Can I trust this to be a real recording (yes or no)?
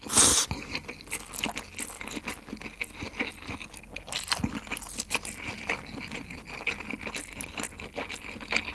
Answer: yes